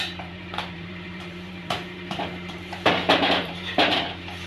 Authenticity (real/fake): fake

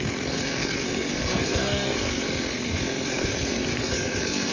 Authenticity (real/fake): fake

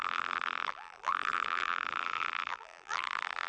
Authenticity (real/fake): fake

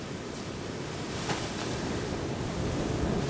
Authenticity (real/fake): real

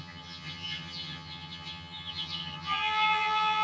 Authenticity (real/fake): fake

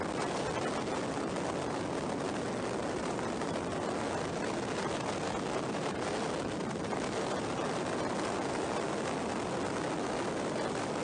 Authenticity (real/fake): real